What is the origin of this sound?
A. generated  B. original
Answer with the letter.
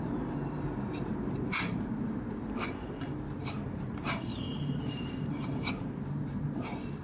A